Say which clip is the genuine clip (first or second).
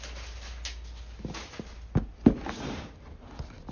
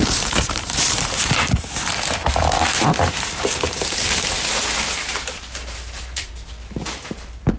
first